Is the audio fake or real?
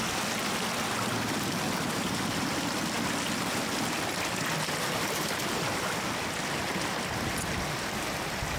real